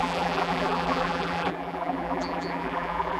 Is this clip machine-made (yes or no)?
yes